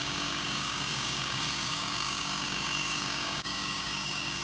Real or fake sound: fake